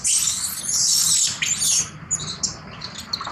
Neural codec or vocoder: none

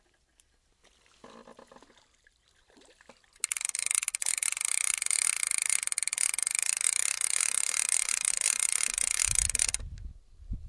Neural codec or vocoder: none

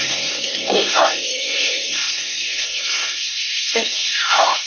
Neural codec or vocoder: codec, SNAC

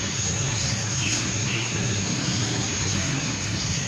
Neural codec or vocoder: codec, SNAC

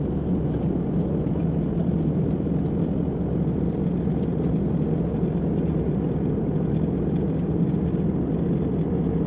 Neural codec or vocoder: none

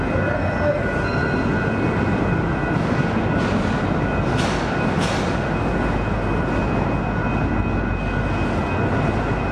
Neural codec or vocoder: none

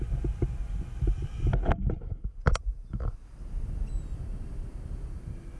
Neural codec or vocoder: none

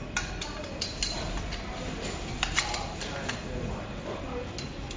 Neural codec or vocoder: none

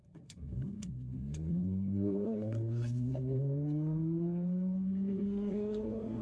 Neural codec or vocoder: codec, SNAC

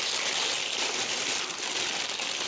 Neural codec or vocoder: none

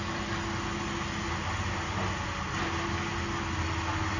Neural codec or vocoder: none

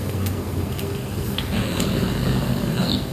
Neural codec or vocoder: codec, SNAC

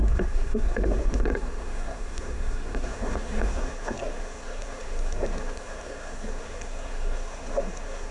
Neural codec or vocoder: codec, SNAC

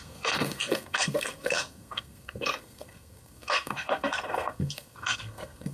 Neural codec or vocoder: codec, SNAC